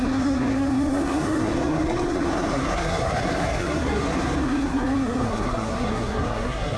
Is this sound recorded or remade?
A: remade